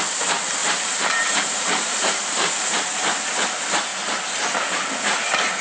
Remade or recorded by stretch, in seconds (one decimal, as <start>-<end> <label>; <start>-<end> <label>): 0.0-0.6 recorded; 0.6-2.9 remade; 2.9-5.6 recorded